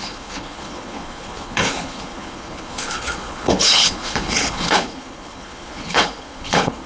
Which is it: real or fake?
fake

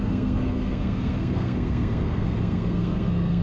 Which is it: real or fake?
fake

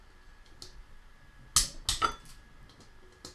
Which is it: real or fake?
real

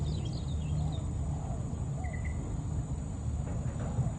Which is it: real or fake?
real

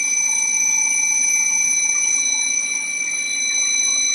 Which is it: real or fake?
real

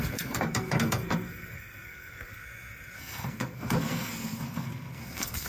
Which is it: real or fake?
fake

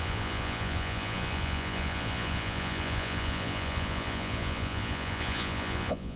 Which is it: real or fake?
fake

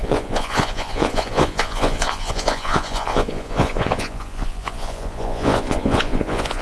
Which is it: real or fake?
fake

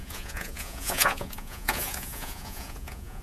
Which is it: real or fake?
fake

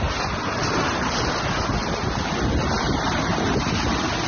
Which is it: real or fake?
real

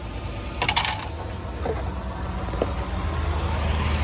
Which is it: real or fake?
real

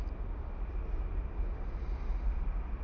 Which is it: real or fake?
real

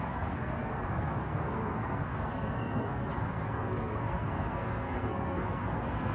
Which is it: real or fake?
fake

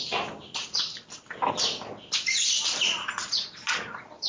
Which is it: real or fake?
real